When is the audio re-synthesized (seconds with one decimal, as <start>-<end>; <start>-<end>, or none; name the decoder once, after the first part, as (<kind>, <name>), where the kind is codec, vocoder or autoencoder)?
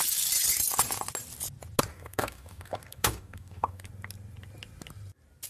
1.9-3.9 (codec, DAC)